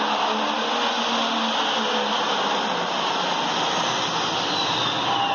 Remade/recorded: recorded